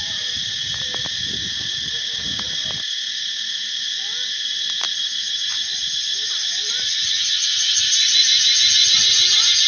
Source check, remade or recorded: recorded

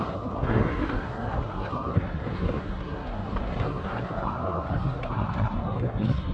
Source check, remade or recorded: remade